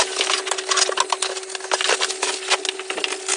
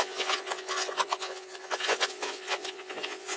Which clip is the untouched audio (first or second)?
first